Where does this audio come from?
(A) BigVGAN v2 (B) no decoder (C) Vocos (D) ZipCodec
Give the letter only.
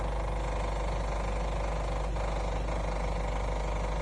B